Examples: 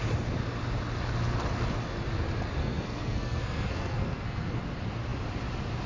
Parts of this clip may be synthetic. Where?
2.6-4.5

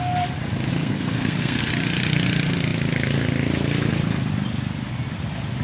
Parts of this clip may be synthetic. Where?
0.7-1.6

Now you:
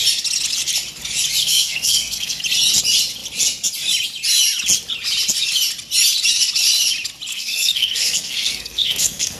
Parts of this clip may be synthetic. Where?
1.4-2.4; 7.3-9.4

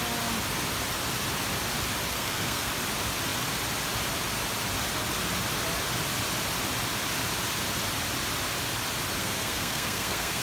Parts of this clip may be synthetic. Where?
2.1-2.7; 9.2-10.4